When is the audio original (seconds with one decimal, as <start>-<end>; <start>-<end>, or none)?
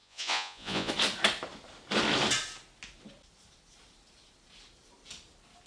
0.9-5.7